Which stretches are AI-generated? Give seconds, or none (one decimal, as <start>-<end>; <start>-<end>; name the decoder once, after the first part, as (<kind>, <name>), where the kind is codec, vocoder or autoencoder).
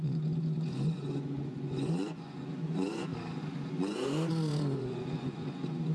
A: 0.0-3.1 (vocoder, Vocos); 3.7-5.9